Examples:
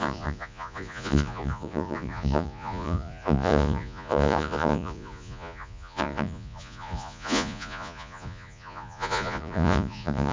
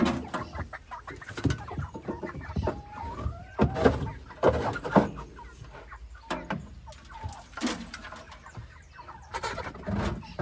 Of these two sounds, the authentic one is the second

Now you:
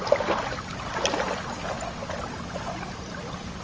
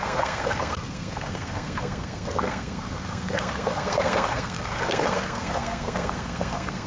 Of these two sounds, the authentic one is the first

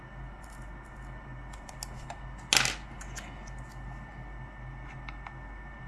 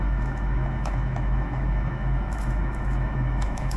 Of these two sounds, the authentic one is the first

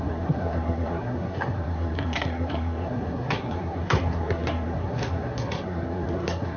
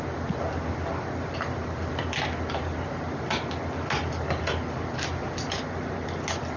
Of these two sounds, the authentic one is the second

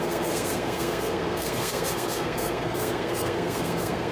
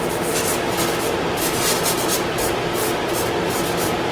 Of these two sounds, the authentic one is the second